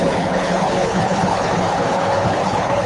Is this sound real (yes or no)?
no